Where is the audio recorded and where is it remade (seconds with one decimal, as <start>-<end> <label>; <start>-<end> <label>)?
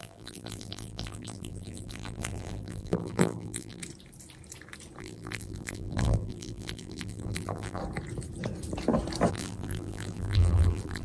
0.0-3.8 remade; 3.8-5.0 recorded; 5.0-7.8 remade; 7.8-9.3 recorded; 9.3-11.0 remade